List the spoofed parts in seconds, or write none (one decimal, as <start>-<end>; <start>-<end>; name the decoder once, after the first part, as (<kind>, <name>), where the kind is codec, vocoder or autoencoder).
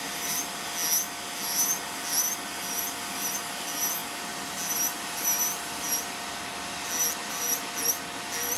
none